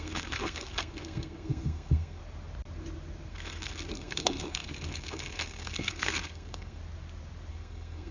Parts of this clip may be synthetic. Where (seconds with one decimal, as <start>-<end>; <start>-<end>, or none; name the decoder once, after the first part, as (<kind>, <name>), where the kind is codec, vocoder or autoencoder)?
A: 0.0-2.2 (codec, SNAC); 3.3-6.8; 7.5-8.1